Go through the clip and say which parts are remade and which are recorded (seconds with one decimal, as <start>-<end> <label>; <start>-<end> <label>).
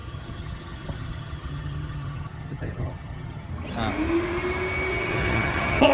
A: 0.0-3.5 remade; 3.5-4.9 recorded; 4.9-5.9 remade